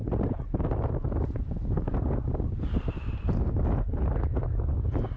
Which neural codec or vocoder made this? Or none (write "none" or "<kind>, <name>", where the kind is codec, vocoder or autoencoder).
none